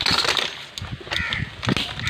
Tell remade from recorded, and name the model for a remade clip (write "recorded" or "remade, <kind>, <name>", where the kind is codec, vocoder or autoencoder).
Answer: recorded